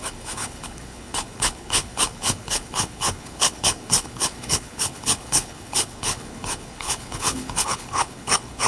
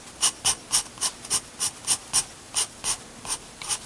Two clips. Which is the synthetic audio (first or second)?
first